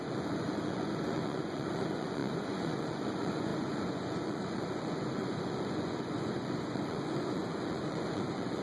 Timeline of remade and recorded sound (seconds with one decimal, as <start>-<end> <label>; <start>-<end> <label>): 0.0-8.6 remade